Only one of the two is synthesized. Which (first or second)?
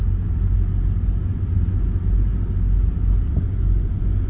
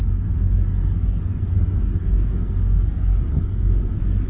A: second